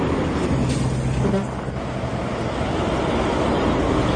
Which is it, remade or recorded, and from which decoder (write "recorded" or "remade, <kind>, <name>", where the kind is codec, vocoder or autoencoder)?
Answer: recorded